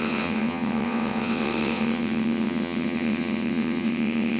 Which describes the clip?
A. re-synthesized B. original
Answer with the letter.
A